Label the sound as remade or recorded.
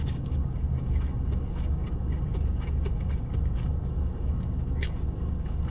remade